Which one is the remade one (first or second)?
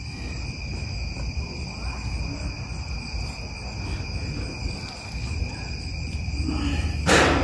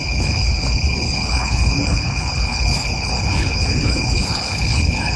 second